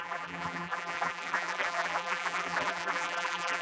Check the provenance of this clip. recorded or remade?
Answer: remade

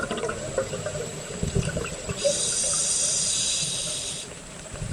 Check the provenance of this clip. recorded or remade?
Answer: remade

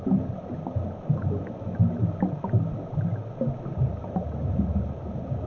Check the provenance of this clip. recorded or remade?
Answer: recorded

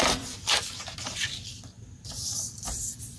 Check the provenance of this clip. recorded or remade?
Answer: remade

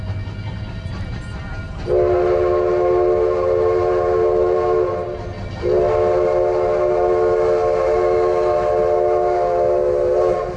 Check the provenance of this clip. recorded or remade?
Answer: recorded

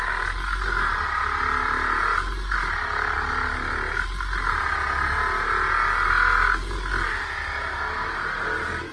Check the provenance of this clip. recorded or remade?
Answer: recorded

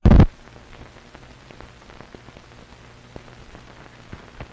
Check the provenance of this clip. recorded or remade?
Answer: recorded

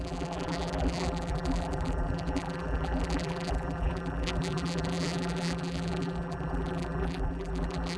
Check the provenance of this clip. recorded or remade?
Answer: remade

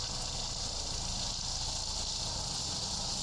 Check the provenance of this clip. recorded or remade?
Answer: recorded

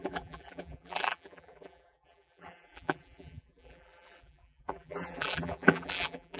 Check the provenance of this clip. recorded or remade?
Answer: remade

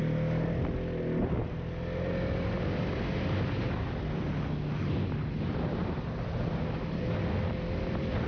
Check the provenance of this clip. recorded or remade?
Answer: recorded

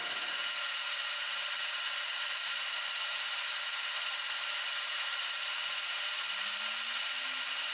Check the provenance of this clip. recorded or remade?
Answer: remade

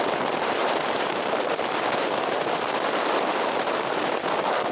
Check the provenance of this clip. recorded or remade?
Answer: remade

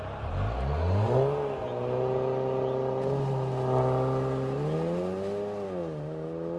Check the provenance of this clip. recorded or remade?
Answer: recorded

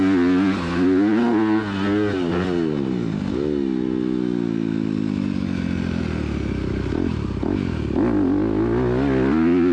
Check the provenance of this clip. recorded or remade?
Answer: recorded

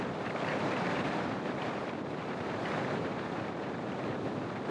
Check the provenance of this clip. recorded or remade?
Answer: remade